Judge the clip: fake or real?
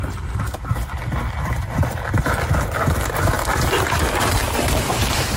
real